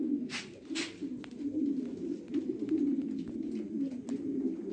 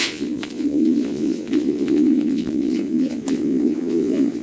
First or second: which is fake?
second